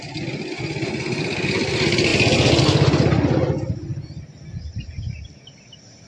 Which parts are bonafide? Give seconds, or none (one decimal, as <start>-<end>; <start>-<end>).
0.0-6.1